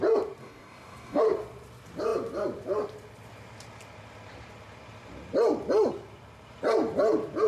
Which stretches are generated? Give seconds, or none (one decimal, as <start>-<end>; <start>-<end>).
0.4-1.2